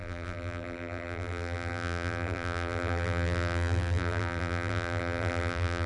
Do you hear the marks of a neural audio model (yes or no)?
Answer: yes